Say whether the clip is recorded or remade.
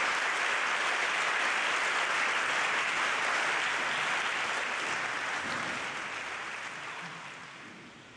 recorded